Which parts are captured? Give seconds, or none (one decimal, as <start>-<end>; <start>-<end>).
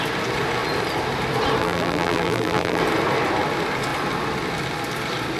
0.0-1.6; 2.8-5.4